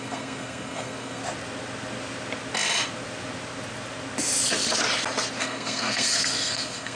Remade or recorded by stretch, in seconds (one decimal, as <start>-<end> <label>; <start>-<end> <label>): 0.0-1.2 remade; 1.2-5.4 recorded; 5.4-7.0 remade